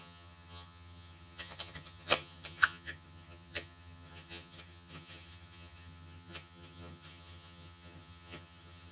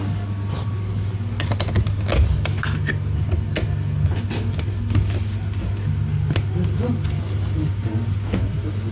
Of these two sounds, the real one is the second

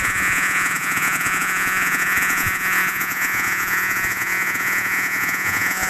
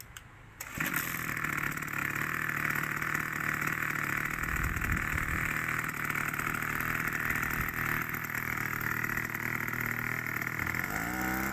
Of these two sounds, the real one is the second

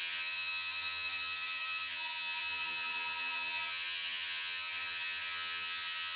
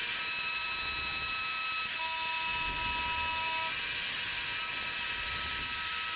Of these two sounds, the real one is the second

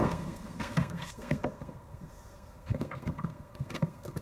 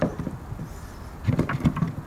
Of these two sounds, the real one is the second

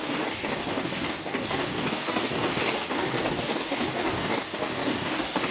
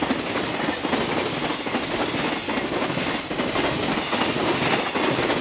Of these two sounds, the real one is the second